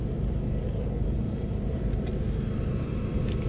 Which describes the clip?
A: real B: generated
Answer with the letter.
A